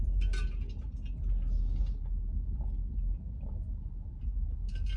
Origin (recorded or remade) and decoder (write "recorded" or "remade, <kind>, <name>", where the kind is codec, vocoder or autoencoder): recorded